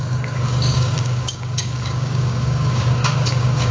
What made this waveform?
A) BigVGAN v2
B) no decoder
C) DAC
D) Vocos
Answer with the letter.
C